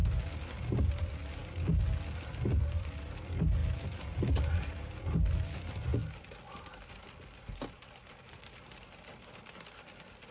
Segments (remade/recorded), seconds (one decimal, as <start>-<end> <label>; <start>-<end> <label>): 0.0-10.3 recorded